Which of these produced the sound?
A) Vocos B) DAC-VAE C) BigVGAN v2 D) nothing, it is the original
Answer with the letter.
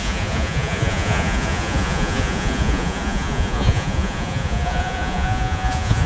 A